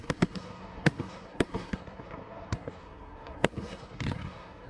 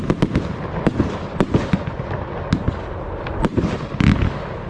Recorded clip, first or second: second